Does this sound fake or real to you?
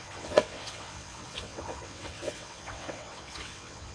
fake